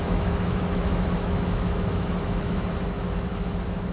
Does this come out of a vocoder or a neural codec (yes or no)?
yes